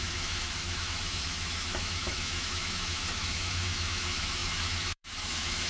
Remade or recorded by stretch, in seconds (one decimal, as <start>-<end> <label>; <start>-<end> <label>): 0.0-5.7 remade